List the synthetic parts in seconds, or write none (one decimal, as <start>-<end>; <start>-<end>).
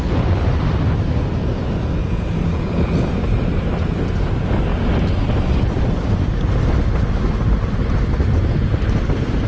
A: 1.4-3.1